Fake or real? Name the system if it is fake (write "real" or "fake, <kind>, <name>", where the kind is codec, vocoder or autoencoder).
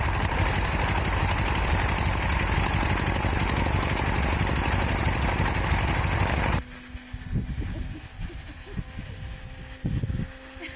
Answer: real